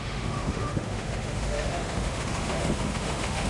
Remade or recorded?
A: remade